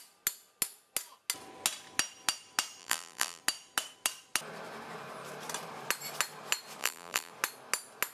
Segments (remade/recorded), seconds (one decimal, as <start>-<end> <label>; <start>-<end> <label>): 0.0-2.8 recorded; 2.8-3.4 remade; 3.4-6.8 recorded; 6.8-7.3 remade; 7.3-8.1 recorded